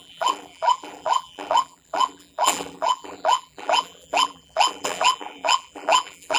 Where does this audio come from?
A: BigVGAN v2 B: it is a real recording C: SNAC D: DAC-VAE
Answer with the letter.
A